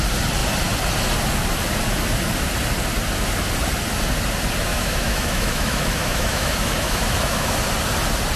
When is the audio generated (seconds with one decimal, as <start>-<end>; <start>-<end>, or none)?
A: 4.7-7.6